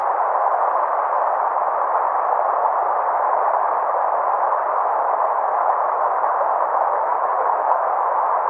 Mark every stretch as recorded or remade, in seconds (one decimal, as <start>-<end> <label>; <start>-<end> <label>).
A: 0.0-6.9 recorded; 6.9-7.8 remade; 7.8-8.5 recorded